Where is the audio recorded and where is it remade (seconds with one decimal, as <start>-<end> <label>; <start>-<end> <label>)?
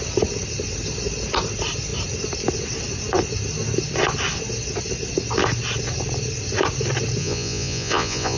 0.0-7.2 recorded; 7.2-8.4 remade